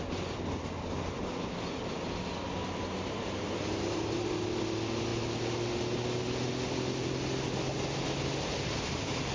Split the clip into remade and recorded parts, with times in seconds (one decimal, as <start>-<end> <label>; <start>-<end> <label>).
0.0-2.6 recorded; 2.6-4.3 remade; 4.3-9.3 recorded